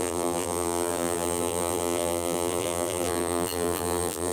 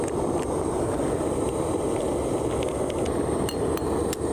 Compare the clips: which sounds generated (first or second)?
first